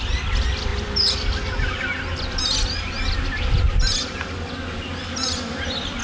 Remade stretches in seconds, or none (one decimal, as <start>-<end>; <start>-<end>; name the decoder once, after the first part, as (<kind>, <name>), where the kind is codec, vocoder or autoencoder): none